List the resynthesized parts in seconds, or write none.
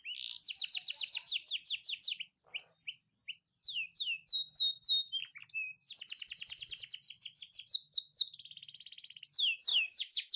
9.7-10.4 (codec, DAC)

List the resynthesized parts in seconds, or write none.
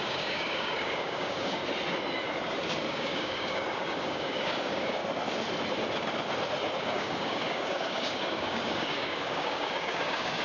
0.0-1.6 (codec, DAC); 2.9-5.0; 6.8-10.4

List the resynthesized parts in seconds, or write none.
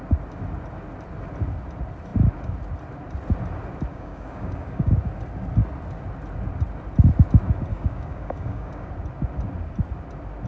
3.9-4.9 (codec, DAC); 7.7-8.9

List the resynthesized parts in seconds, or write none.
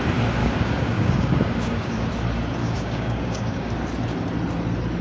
0.4-2.1 (codec, DAC); 2.6-3.7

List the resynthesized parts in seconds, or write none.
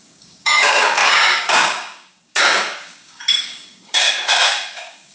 0.0-5.1 (codec, DAC)